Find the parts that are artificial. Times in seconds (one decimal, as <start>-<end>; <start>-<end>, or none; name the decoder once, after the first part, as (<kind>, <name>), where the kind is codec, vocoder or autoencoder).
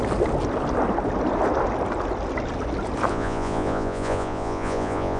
3.1-5.2 (vocoder, Vocos)